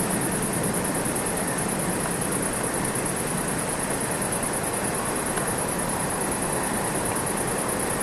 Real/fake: real